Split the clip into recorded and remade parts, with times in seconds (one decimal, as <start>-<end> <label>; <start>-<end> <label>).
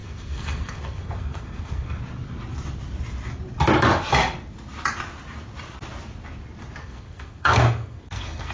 0.0-2.0 remade; 2.0-6.8 recorded; 6.8-8.5 remade